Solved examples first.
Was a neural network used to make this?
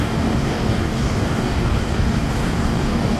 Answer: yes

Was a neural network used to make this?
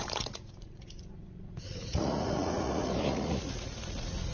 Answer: yes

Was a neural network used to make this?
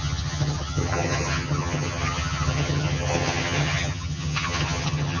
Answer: yes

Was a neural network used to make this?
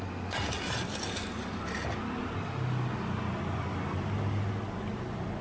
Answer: no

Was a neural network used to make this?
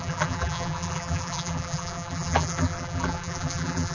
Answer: yes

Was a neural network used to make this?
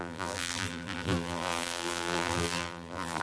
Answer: yes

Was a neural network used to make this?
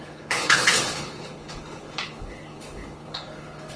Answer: yes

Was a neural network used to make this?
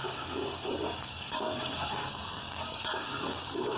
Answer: yes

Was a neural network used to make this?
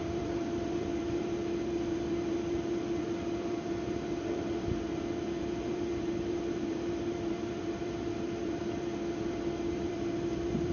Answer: yes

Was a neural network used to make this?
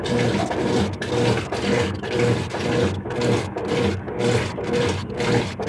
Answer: no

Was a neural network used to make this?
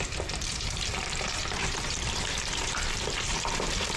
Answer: yes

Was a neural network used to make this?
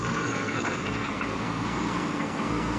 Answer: yes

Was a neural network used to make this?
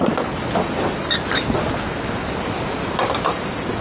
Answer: no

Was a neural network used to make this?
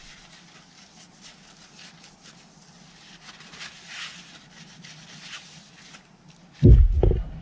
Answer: no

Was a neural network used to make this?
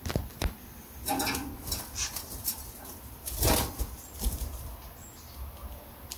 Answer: no